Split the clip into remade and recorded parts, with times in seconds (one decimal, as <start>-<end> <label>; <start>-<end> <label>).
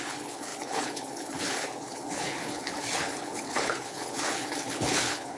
0.0-5.4 remade